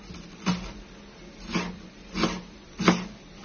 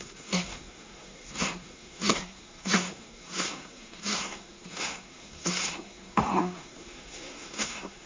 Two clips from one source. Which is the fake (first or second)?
second